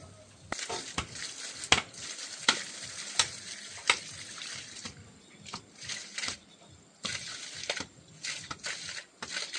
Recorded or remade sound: recorded